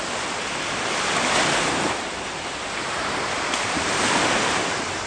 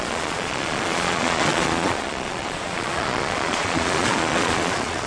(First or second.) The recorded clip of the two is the first